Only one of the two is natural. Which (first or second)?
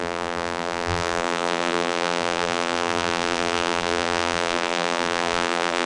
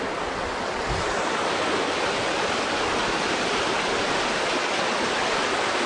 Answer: second